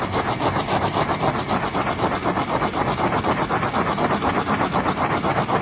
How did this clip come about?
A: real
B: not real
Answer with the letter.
A